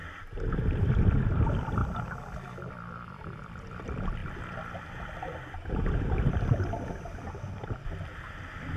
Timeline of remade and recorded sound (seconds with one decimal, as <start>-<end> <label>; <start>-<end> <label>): 0.0-1.0 recorded; 1.0-1.8 remade; 1.8-2.7 recorded; 2.7-4.2 remade; 4.2-5.7 recorded; 5.7-8.8 remade

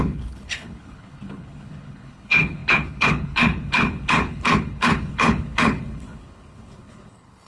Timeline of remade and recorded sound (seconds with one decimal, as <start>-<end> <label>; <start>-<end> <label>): 0.0-7.5 remade

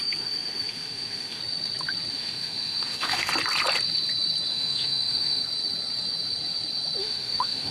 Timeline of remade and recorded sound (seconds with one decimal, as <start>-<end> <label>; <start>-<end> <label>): 0.0-1.4 remade; 1.4-2.1 recorded; 2.1-3.3 remade; 3.3-4.5 recorded; 4.5-5.4 remade; 5.4-7.0 recorded; 7.0-7.7 remade